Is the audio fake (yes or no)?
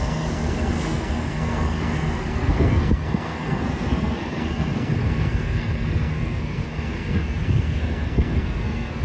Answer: yes